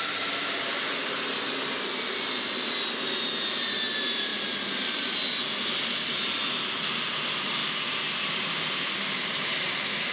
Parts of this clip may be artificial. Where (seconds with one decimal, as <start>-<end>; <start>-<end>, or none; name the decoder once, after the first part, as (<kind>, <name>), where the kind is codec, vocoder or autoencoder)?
none